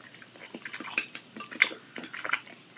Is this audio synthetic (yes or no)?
yes